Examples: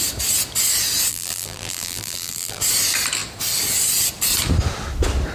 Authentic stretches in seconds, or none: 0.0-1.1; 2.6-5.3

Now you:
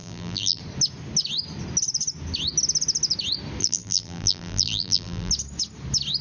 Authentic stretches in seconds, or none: 0.6-3.6; 5.3-6.2